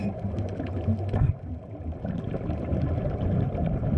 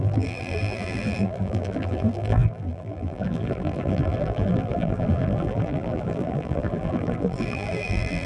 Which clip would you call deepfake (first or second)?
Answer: second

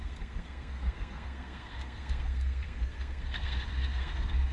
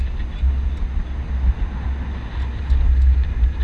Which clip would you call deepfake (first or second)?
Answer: first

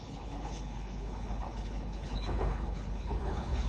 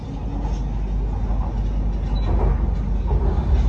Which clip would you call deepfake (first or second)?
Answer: first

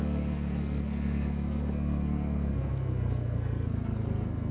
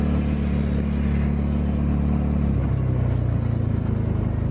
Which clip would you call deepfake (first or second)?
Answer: first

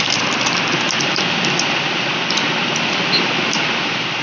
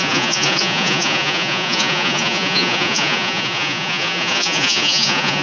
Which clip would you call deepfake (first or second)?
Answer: second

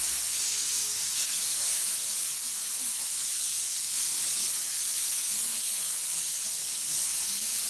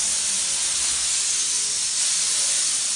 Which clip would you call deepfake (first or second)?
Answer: first